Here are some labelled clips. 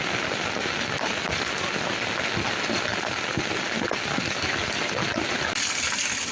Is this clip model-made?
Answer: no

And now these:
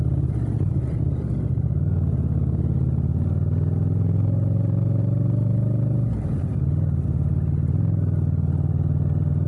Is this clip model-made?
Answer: no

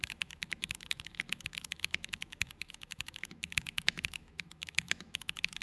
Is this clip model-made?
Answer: yes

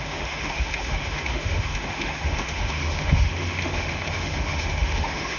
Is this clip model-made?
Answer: yes